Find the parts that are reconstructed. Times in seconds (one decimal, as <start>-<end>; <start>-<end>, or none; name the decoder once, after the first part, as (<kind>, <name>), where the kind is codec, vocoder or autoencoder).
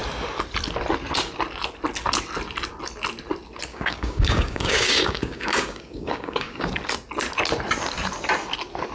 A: 3.7-6.7 (codec, DAC)